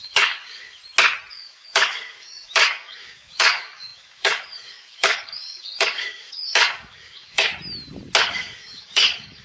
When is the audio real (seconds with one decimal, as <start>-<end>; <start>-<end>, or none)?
0.8-1.3; 7.5-8.2